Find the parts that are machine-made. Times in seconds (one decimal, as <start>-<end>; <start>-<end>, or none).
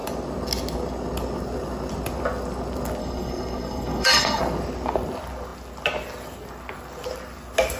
3.0-4.4